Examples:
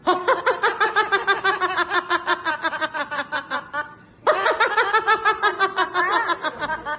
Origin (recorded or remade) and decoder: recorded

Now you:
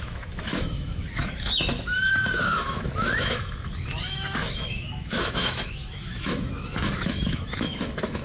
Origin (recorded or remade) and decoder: remade, autoencoder, DAC-VAE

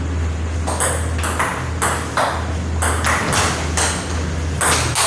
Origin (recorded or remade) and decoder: recorded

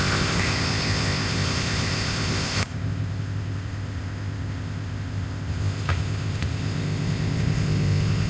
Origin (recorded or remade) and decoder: remade, codec, ZipCodec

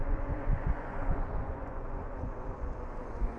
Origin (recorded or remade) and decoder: remade, vocoder, Vocos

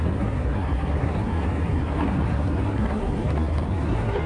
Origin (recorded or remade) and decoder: remade, codec, SNAC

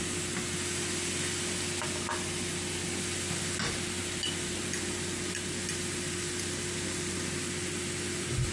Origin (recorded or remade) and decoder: recorded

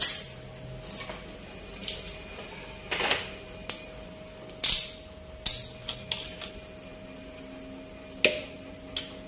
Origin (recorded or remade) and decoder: recorded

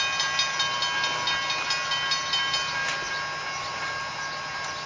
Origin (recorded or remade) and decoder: recorded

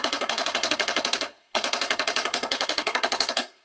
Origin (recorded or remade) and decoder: remade, codec, SNAC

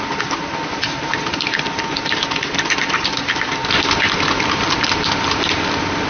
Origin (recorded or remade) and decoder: recorded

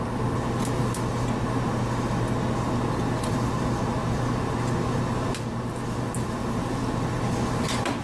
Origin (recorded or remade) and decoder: recorded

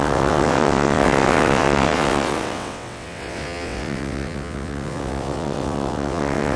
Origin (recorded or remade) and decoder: remade, vocoder, WaveNeXt